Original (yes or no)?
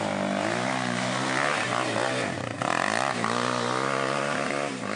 yes